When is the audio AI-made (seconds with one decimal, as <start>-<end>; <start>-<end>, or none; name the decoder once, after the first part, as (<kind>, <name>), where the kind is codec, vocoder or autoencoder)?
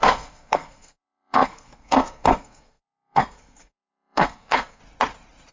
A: 0.0-4.8 (codec, SNAC)